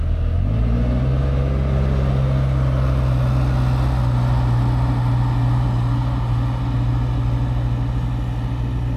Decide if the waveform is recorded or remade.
recorded